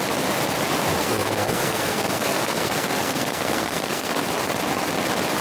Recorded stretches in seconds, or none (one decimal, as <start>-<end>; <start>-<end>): 0.0-1.0; 4.2-5.4